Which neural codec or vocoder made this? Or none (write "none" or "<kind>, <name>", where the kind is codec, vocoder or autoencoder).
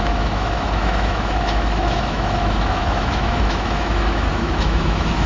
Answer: autoencoder, DAC-VAE